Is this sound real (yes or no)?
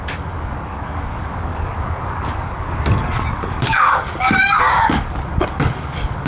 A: no